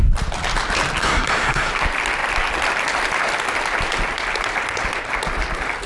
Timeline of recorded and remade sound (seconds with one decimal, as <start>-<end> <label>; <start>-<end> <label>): 0.0-1.0 recorded; 1.0-1.7 remade; 1.7-5.9 recorded